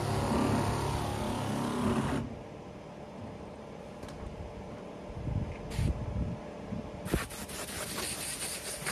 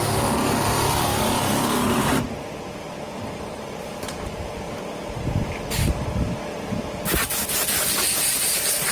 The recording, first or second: first